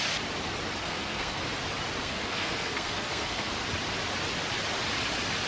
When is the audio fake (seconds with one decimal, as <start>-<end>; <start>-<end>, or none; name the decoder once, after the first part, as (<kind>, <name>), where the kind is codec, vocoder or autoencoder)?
0.8-1.4 (codec, SNAC); 2.0-3.5